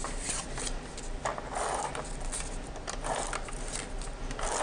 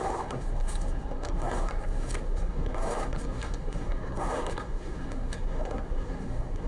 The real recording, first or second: first